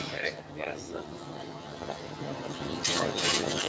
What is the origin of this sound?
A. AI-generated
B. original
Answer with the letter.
A